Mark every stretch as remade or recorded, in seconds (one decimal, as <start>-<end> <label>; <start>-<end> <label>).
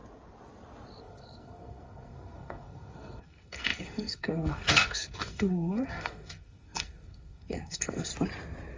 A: 0.0-1.0 recorded; 1.0-8.1 remade; 8.1-8.8 recorded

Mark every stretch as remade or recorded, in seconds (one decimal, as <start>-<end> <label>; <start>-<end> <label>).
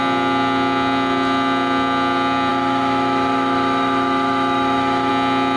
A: 0.0-2.5 recorded; 2.5-5.1 remade; 5.1-5.6 recorded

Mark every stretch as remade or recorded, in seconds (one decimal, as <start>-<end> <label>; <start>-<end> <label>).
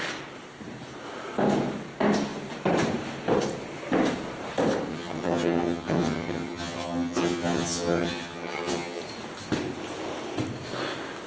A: 0.0-4.9 recorded; 4.9-9.0 remade; 9.0-11.3 recorded